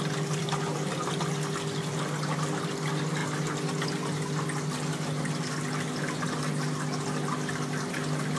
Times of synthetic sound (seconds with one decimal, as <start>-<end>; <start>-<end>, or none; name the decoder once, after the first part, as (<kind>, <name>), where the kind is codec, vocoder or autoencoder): none